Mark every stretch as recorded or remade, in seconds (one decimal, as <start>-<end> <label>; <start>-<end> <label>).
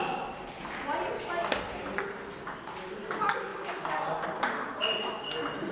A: 0.0-5.7 recorded